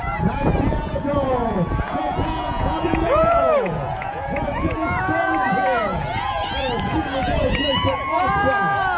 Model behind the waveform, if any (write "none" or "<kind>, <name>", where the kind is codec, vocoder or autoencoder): vocoder, Vocos